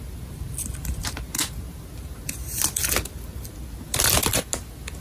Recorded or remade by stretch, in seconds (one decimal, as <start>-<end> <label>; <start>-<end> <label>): 0.0-5.0 recorded